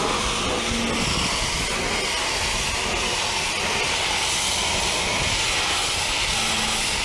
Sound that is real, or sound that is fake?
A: real